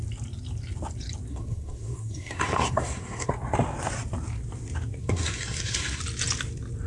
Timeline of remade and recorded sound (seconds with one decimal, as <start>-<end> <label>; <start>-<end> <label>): 0.0-1.3 recorded; 1.3-3.3 remade; 3.3-5.0 recorded; 5.0-6.0 remade; 6.0-6.9 recorded